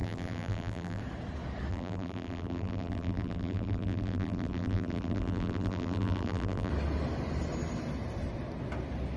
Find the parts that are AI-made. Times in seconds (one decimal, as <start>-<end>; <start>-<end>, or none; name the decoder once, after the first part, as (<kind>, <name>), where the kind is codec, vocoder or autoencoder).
0.0-1.0 (vocoder, BigVGAN v2); 1.7-6.7